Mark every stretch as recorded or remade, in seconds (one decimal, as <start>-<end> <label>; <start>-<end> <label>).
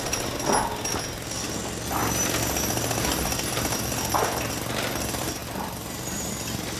0.0-5.4 recorded; 5.4-6.3 remade; 6.3-6.8 recorded